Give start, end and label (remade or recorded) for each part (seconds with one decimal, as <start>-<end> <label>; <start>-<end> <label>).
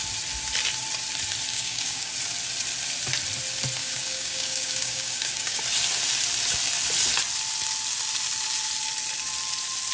0.0-1.5 recorded; 1.5-2.1 remade; 2.1-3.8 recorded; 3.8-5.6 remade; 5.6-9.9 recorded